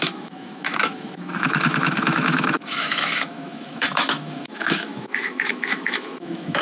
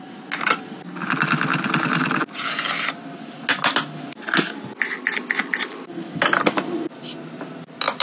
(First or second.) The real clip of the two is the second